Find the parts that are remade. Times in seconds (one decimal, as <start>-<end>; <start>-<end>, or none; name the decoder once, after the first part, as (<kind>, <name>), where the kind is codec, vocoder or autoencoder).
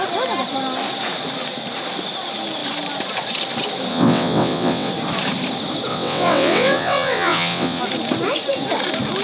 3.9-4.9 (vocoder, WaveNeXt); 5.9-7.8